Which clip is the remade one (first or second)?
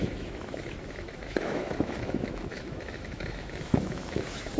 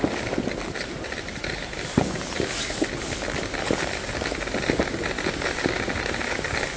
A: first